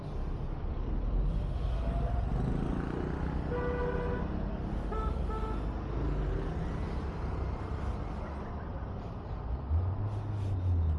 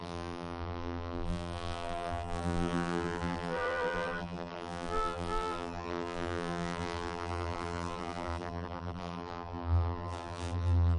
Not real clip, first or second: second